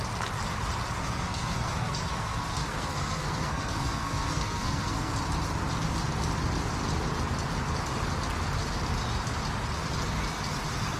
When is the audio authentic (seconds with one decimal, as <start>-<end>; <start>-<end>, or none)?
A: 0.0-1.0; 5.1-11.0